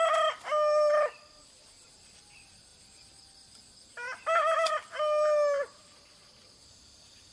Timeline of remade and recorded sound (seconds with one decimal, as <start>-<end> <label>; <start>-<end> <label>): 0.0-7.3 recorded